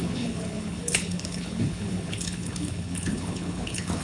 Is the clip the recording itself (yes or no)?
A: no